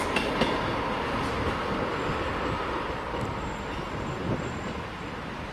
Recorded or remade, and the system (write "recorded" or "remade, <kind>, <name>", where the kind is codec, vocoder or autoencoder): recorded